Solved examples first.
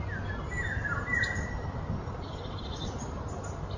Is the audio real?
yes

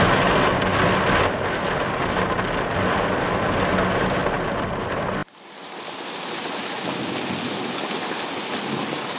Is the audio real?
yes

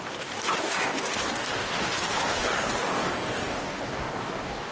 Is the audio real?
no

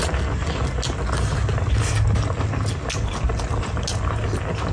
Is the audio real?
yes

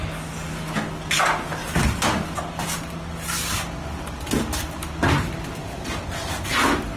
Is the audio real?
yes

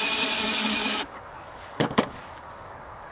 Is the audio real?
no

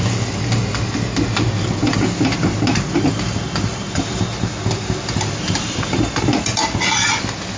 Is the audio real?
yes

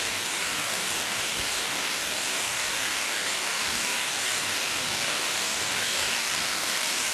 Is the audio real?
no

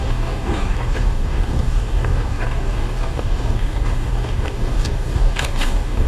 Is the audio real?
no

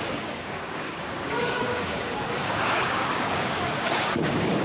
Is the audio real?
no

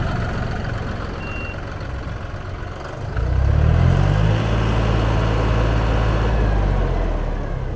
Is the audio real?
yes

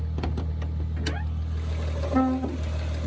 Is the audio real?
yes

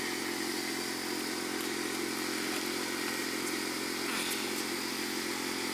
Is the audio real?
yes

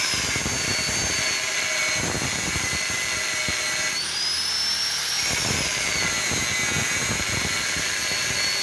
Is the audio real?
yes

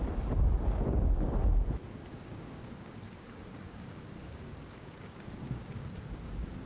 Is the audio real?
no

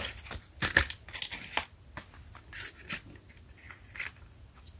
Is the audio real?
yes